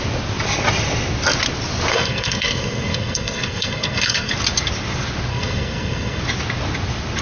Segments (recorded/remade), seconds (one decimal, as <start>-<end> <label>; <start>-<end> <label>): 0.0-1.9 recorded; 1.9-4.3 remade; 4.3-5.3 recorded; 5.3-6.2 remade; 6.2-7.2 recorded